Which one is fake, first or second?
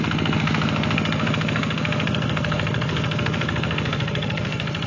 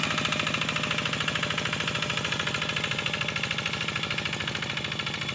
first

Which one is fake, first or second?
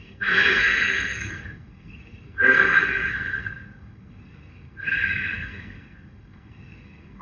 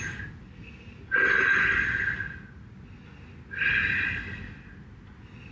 first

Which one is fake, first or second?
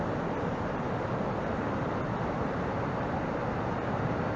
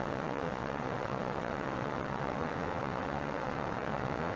second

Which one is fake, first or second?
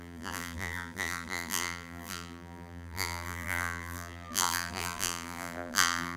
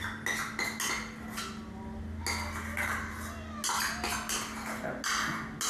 first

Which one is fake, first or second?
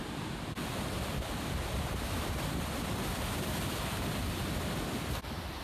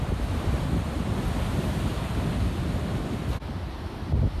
first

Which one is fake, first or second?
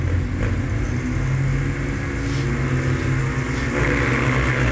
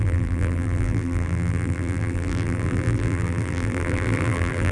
second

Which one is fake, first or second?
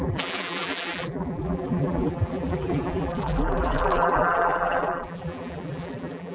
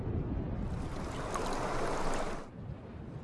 first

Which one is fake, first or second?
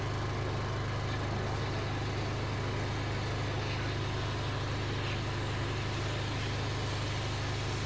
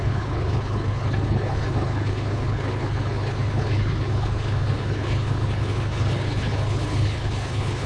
second